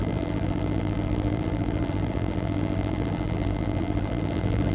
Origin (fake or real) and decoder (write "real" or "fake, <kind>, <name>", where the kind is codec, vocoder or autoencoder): fake, vocoder, BigVGAN v2